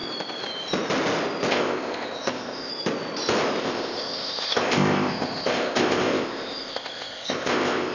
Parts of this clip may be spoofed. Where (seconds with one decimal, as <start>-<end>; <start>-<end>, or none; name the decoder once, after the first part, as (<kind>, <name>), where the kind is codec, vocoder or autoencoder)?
1.5-2.7 (codec, ZipCodec); 3.6-7.9